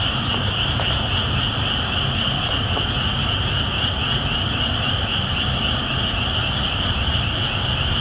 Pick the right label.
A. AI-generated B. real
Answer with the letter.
B